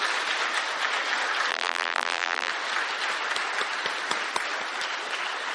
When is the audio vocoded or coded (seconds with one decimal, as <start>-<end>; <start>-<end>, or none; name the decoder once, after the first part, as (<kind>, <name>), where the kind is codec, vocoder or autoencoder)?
1.5-2.5 (vocoder, BigVGAN v2)